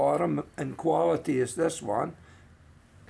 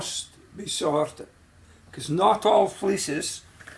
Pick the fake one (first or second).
second